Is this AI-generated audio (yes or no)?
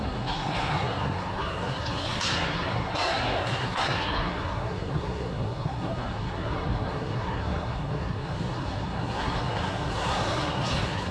yes